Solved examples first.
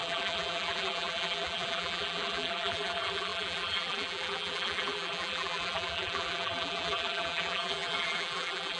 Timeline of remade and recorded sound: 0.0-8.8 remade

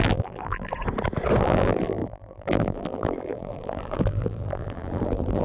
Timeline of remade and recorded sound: 0.0-0.7 remade; 0.7-1.4 recorded; 1.4-5.4 remade

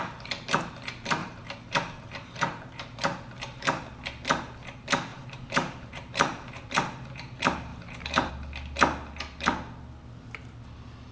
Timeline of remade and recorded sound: 0.0-1.2 recorded; 1.2-2.7 remade; 2.7-5.1 recorded; 5.1-6.7 remade; 6.7-7.7 recorded; 7.7-8.3 remade; 8.3-11.1 recorded

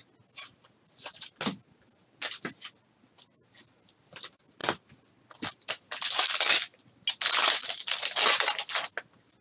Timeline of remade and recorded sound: 0.0-9.4 recorded

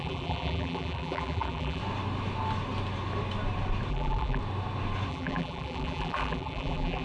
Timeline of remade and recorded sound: 0.0-1.8 remade; 1.8-3.9 recorded; 3.9-4.4 remade; 4.4-5.1 recorded; 5.1-7.0 remade